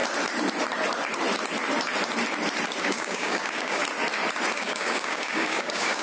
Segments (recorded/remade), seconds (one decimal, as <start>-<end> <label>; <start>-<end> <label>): 0.0-2.8 recorded; 2.8-3.8 remade; 3.8-4.5 recorded; 4.5-6.0 remade